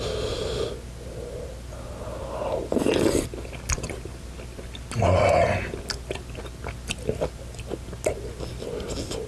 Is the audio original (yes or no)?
yes